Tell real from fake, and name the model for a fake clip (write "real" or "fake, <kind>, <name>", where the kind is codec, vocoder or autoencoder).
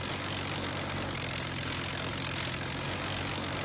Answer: real